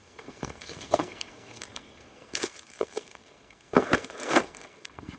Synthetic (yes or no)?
yes